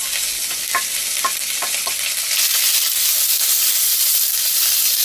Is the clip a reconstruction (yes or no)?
no